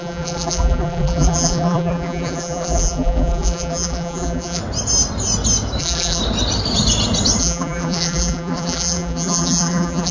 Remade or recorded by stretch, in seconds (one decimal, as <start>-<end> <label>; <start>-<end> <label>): 0.0-4.6 remade; 4.6-5.8 recorded; 5.8-6.2 remade; 6.2-7.4 recorded; 7.4-10.1 remade